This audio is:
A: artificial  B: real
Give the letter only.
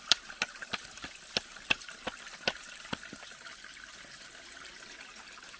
B